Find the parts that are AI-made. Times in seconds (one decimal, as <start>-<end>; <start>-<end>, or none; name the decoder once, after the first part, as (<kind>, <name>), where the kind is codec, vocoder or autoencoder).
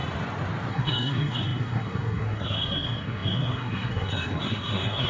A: 0.7-5.1 (codec, SNAC)